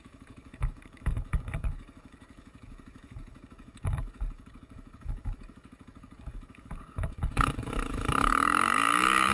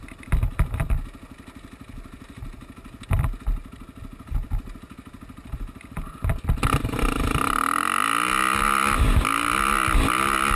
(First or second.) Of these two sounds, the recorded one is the second